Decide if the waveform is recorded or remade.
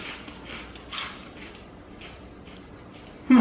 recorded